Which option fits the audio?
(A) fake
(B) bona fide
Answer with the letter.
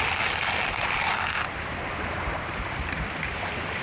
B